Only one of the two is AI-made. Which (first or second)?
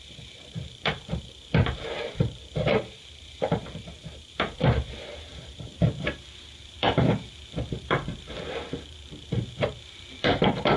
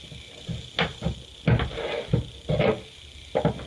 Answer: first